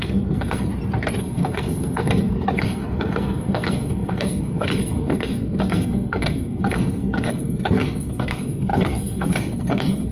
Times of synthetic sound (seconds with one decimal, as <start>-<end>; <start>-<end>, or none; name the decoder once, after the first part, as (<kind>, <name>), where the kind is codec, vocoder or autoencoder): 0.0-0.7 (codec, SNAC); 1.2-10.1